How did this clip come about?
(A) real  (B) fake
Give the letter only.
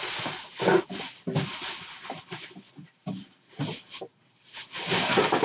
A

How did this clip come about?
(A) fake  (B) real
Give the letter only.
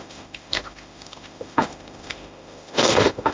A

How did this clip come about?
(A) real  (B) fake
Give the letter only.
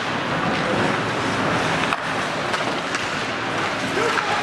A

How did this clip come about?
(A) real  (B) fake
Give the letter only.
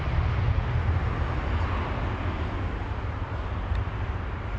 A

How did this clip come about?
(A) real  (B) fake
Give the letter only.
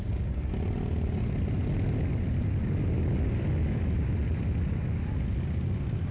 A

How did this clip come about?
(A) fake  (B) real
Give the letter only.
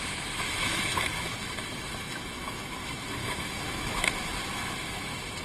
A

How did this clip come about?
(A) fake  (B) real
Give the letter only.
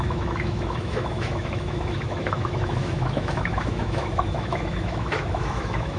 A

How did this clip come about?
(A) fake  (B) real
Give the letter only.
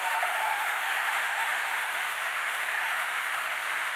A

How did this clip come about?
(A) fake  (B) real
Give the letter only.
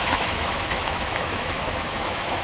A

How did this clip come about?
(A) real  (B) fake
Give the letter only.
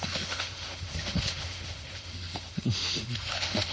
B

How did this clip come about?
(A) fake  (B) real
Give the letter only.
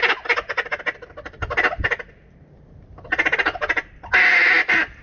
B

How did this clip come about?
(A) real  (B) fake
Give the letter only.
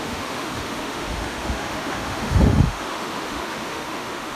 B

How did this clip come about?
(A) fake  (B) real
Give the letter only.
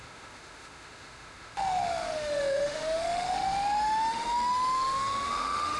A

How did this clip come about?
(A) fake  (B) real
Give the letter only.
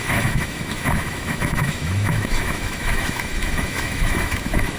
A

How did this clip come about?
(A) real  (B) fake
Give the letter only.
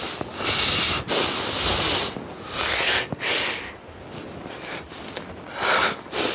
A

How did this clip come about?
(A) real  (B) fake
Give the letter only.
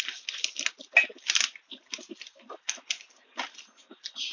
A